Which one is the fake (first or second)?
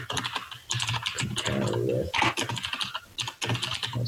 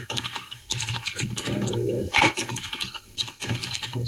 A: second